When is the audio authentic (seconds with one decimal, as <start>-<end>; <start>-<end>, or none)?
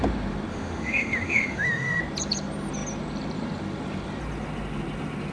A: 0.0-0.5; 2.0-5.3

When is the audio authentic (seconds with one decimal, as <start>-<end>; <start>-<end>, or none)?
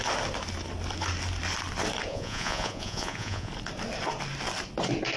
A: 0.0-2.1; 3.5-5.2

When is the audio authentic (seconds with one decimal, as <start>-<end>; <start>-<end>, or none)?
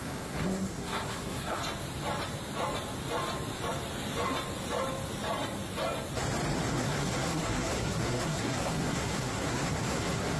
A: 1.6-6.7